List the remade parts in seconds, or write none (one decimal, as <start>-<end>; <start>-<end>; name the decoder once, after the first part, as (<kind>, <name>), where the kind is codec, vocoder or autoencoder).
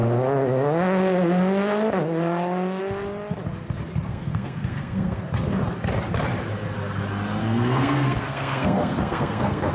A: 4.1-5.2 (codec, SNAC); 7.4-9.7